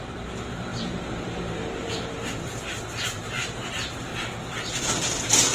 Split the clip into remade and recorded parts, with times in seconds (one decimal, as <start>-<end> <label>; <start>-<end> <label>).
0.0-4.1 remade; 4.1-4.7 recorded; 4.7-5.5 remade